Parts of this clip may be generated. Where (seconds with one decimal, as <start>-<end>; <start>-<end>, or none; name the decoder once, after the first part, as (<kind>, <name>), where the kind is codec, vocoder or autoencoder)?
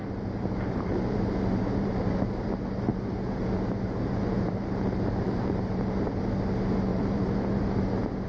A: 0.0-2.5 (vocoder, BigVGAN v2); 2.9-6.2; 6.9-7.8